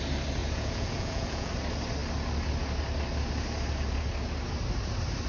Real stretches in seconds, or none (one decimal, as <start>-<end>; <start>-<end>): 0.0-0.4; 1.5-5.3